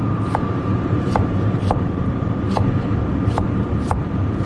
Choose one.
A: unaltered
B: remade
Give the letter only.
B